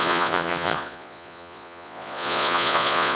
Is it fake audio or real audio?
fake